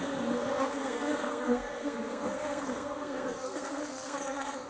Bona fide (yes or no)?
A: no